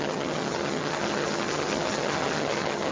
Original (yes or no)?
no